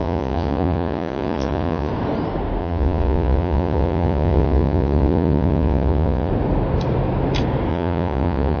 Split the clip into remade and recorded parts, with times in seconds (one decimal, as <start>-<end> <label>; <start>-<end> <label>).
0.0-1.9 remade; 1.9-2.6 recorded; 2.6-6.3 remade; 6.3-7.7 recorded; 7.7-8.6 remade